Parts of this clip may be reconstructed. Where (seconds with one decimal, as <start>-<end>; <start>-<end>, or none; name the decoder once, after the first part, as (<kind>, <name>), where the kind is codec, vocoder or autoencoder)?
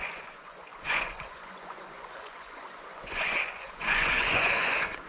0.0-5.1 (vocoder, Vocos)